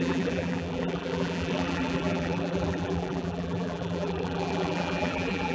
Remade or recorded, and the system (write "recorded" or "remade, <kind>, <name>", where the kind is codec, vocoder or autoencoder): remade, vocoder, BigVGAN v2